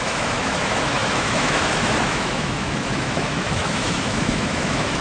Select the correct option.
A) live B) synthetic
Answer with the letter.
B